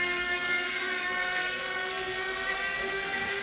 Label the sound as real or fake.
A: fake